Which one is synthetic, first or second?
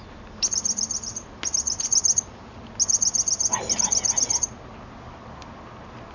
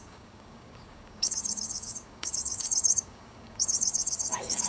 second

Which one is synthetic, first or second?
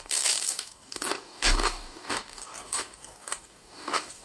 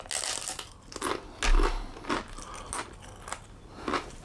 first